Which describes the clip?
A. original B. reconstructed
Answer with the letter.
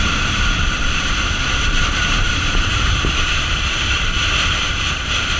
B